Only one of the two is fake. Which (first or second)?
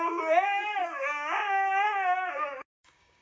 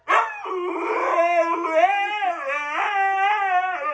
first